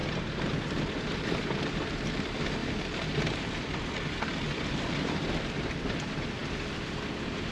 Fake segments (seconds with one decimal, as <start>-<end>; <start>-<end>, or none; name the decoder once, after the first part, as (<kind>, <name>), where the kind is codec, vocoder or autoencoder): 0.7-2.6 (vocoder, BigVGAN v2); 4.7-7.5